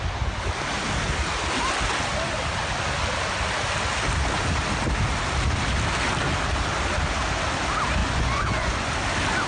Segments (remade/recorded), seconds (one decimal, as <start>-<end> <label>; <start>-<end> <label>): 0.0-8.0 recorded; 8.0-8.9 remade; 8.9-9.5 recorded